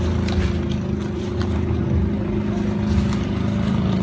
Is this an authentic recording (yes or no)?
yes